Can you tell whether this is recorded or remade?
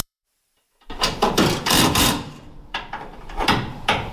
remade